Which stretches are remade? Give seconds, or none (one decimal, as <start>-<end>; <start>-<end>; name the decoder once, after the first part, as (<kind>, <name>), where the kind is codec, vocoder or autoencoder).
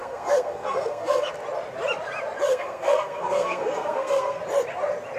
0.0-1.3 (codec, SNAC); 2.5-4.4